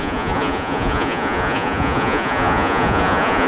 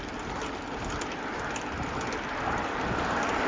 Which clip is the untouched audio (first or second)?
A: second